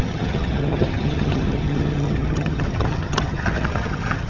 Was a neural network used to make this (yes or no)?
yes